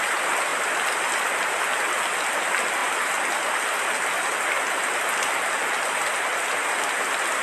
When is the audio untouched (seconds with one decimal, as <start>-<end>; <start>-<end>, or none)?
0.0-0.5; 1.6-7.4